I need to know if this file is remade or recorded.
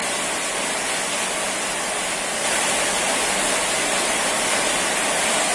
recorded